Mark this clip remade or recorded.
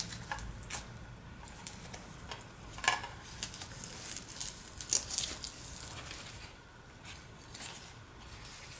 recorded